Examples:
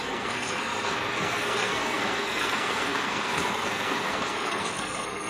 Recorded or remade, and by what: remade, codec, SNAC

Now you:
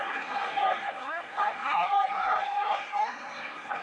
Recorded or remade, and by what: remade, codec, SNAC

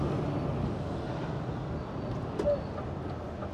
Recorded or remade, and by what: recorded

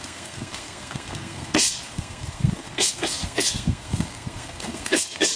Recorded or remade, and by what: remade, codec, SNAC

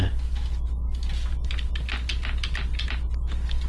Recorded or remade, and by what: recorded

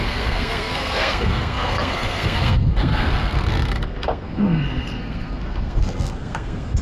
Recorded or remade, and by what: remade, codec, SNAC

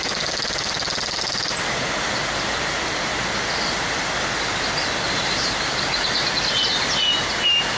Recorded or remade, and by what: recorded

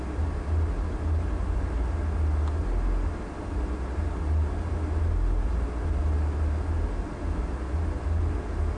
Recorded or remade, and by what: recorded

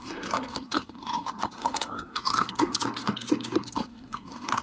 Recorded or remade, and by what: remade, codec, SNAC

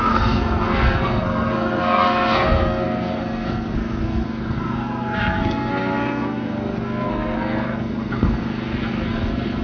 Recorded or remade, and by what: remade, codec, SNAC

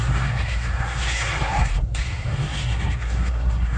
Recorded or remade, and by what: remade, codec, SNAC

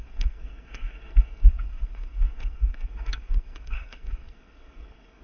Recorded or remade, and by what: remade, codec, SNAC